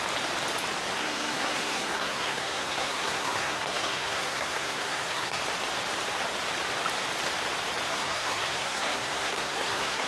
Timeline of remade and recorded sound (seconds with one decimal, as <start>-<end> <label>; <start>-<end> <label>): 0.0-1.0 recorded; 1.0-5.4 remade; 5.4-7.9 recorded; 7.9-10.1 remade